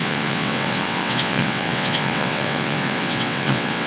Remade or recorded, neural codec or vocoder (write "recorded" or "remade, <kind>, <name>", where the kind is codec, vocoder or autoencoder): remade, vocoder, WaveNeXt